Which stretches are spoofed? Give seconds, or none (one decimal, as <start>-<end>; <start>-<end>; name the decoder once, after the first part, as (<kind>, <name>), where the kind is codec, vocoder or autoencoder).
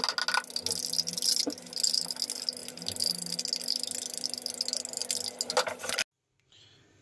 none